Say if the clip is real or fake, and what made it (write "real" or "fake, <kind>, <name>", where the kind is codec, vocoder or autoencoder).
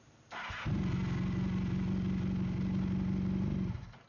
real